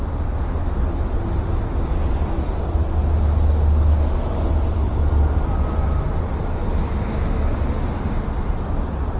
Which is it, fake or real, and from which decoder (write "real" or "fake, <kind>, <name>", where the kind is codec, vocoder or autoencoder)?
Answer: real